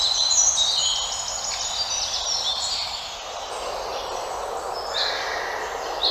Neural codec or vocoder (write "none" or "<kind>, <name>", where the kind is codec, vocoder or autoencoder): none